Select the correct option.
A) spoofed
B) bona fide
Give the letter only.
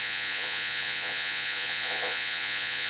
A